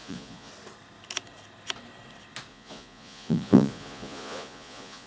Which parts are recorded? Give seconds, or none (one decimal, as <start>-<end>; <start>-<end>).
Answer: 0.5-2.5